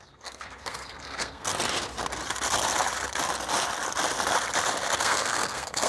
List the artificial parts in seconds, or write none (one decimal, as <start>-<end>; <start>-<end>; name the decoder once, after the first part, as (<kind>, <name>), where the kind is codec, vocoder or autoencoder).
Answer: 0.0-1.5 (codec, SNAC); 5.0-5.9